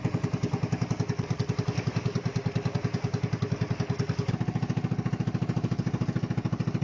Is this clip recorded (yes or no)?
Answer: yes